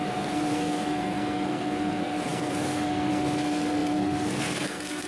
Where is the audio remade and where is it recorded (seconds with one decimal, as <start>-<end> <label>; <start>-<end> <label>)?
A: 0.0-5.1 remade